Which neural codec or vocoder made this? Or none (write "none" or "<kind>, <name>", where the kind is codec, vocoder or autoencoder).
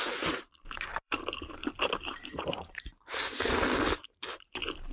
vocoder, BigVGAN v2